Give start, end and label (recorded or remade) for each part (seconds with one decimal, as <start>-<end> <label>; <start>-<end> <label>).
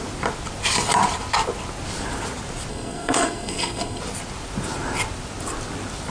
0.0-2.7 recorded; 2.7-4.0 remade; 4.0-6.1 recorded